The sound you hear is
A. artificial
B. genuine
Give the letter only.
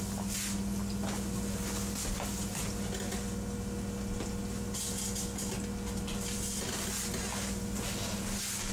B